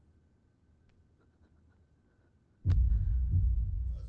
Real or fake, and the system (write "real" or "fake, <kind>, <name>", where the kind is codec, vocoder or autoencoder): real